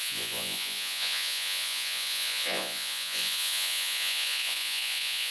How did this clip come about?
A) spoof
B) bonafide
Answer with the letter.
A